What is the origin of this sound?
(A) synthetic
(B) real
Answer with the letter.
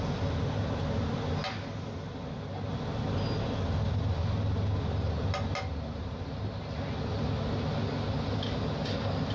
B